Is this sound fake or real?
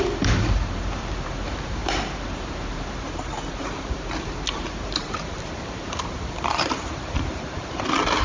fake